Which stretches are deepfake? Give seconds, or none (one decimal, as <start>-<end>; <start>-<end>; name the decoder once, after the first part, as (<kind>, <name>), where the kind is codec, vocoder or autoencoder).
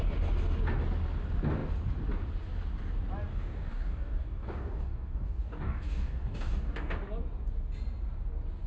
3.3-6.9 (codec, DAC)